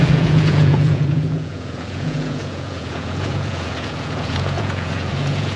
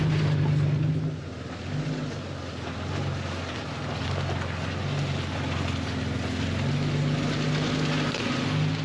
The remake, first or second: first